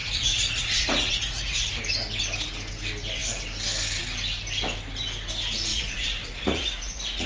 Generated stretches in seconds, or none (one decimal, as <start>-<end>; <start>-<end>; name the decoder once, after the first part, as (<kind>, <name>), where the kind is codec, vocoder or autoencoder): 0.0-1.8 (vocoder, Vocos); 5.7-7.3